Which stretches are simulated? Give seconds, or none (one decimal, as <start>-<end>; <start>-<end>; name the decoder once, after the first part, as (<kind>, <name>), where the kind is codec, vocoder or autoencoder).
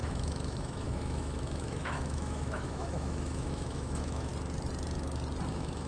0.0-4.3 (autoencoder, DAC-VAE); 5.5-5.9